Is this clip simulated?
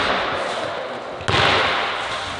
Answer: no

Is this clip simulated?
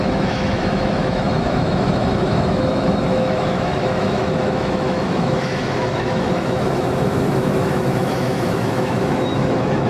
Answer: yes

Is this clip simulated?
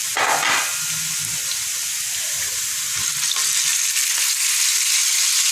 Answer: no